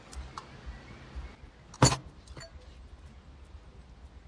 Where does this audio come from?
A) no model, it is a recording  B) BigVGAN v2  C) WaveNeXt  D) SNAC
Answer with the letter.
A